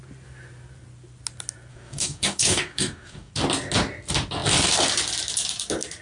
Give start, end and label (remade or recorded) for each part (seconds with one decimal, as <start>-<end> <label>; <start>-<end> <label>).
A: 0.0-1.7 recorded; 1.7-3.3 remade; 3.3-6.0 recorded